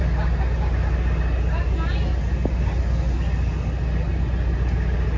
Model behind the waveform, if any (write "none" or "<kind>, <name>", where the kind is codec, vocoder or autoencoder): none